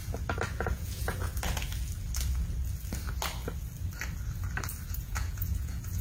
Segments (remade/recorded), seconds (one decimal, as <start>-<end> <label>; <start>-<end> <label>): 0.0-0.6 recorded; 0.6-1.3 remade; 1.3-4.9 recorded; 4.9-6.0 remade